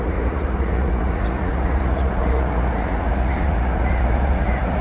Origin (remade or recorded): remade